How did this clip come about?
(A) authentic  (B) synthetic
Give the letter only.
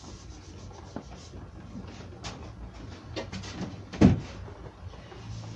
A